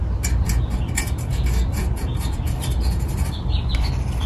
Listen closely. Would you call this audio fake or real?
real